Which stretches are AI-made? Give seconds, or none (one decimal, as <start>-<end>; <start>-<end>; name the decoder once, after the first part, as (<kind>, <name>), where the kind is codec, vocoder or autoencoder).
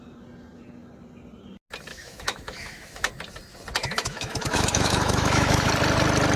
1.9-3.1 (autoencoder, DAC-VAE); 3.8-5.7